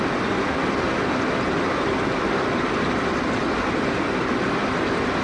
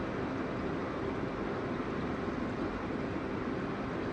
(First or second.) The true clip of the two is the second